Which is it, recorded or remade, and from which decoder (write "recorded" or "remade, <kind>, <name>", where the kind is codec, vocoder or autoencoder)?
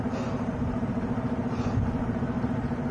remade, vocoder, BigVGAN v2